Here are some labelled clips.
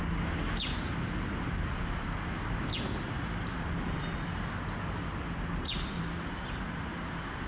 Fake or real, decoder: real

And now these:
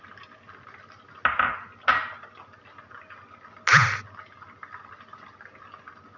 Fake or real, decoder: real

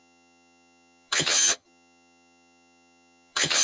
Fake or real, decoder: fake, vocoder, HiFi-GAN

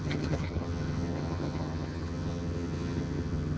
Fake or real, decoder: fake, vocoder, HiFi-GAN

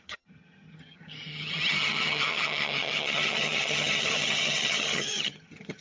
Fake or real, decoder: fake, vocoder, HiFi-GAN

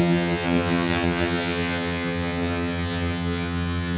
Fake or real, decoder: fake, vocoder, HiFi-GAN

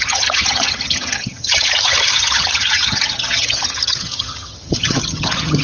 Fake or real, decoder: fake, vocoder, HiFi-GAN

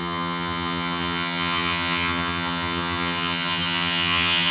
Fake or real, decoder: fake, vocoder, HiFi-GAN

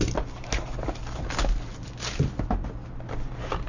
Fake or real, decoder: real